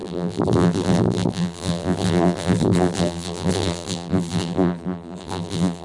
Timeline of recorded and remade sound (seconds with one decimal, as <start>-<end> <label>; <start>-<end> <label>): 0.0-5.8 remade